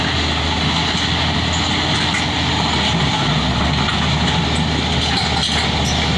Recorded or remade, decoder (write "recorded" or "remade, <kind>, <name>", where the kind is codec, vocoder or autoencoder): recorded